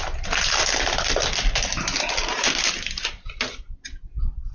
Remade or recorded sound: recorded